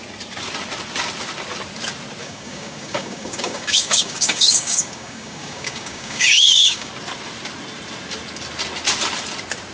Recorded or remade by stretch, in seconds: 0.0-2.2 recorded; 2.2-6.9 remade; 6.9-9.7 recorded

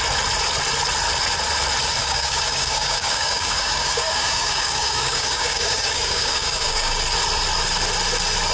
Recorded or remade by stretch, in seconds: 0.0-2.0 recorded; 2.0-7.0 remade; 7.0-8.5 recorded